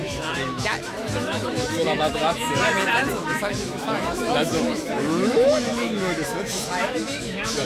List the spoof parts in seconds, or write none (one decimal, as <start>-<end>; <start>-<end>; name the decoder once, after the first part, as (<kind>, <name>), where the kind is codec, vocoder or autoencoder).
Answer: 0.0-7.6 (autoencoder, DAC-VAE)